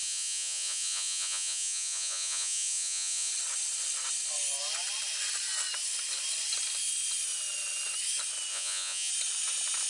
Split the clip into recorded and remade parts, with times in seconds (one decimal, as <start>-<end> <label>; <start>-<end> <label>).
0.0-3.3 remade; 3.3-8.5 recorded; 8.5-9.1 remade; 9.1-9.9 recorded